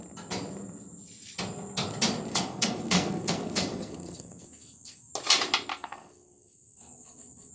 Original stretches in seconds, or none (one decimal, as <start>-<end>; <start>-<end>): 0.0-2.3; 5.1-5.7